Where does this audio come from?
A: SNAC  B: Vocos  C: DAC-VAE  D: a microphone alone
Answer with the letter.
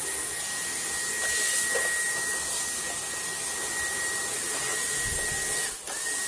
D